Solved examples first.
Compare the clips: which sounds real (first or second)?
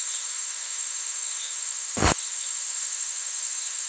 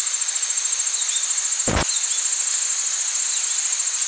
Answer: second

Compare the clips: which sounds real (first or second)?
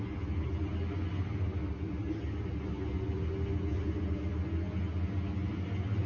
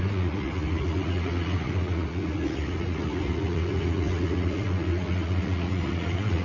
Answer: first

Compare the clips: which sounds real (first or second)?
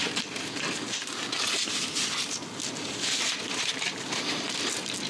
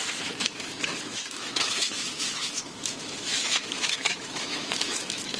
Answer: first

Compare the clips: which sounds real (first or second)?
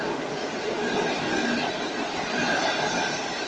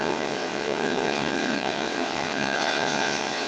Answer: first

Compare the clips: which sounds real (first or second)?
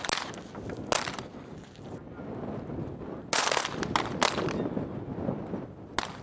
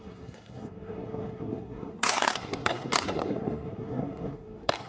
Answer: first